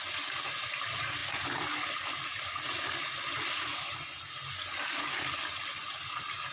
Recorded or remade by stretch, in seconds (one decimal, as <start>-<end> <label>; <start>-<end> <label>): 0.0-6.5 recorded